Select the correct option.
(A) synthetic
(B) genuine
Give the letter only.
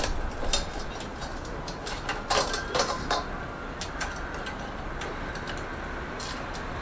B